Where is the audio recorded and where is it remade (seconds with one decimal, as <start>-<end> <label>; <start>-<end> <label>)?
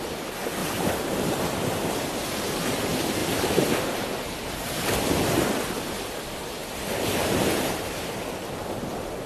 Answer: 0.0-0.6 recorded; 0.6-1.6 remade; 1.6-3.2 recorded; 3.2-3.7 remade; 3.7-6.6 recorded; 6.6-8.2 remade; 8.2-9.3 recorded